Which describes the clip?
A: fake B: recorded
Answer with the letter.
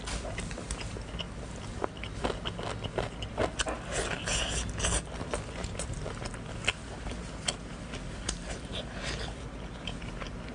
B